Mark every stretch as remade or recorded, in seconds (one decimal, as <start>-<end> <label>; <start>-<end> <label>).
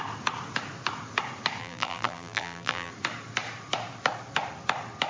0.0-1.6 recorded; 1.6-2.9 remade; 2.9-5.1 recorded